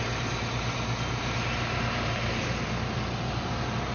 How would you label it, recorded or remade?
recorded